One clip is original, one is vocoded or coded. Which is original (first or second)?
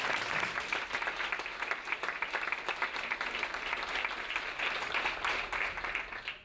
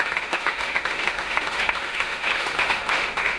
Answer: first